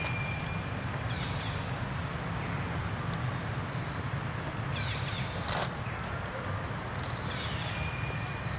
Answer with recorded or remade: recorded